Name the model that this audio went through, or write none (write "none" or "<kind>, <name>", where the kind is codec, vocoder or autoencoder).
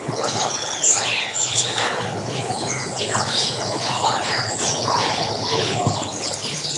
codec, HILCodec